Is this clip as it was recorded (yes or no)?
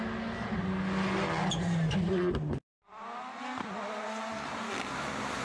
yes